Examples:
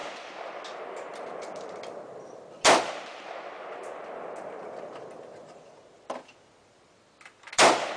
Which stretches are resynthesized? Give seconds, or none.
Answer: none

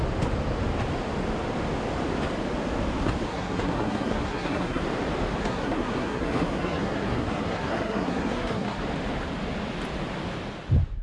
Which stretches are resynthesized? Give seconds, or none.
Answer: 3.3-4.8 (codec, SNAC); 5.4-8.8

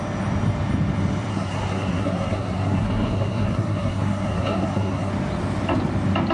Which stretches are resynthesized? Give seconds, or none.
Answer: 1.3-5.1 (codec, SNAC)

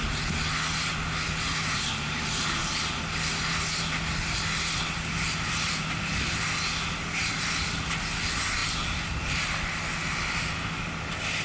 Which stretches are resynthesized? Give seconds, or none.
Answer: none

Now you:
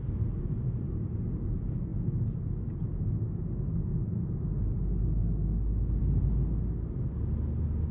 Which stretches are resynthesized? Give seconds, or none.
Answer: none

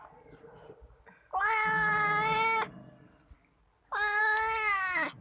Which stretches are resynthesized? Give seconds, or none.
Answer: none

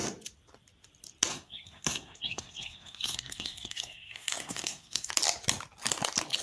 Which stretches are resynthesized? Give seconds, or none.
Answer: 1.3-5.1 (codec, SNAC)